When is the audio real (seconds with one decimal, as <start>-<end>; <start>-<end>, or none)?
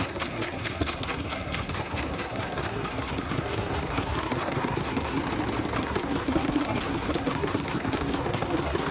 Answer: 5.2-5.8